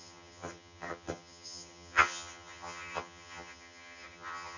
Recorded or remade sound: remade